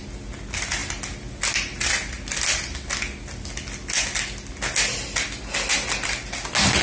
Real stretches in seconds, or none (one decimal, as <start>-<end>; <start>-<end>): 0.0-6.8